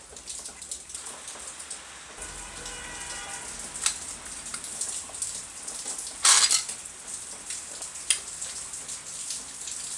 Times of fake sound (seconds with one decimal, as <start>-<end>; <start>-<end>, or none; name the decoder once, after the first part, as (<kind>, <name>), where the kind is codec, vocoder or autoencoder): none